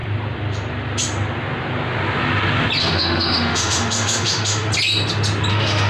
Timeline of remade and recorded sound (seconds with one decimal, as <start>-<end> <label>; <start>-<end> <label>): 0.0-2.8 recorded; 2.8-4.7 remade; 4.7-5.5 recorded; 5.5-5.9 remade

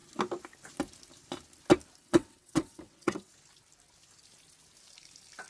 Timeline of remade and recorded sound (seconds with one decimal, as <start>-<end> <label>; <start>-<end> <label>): 0.0-2.0 recorded; 2.0-3.3 remade; 3.3-5.5 recorded

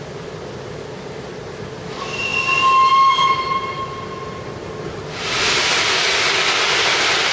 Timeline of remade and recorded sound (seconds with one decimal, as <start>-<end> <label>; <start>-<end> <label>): 0.0-7.3 recorded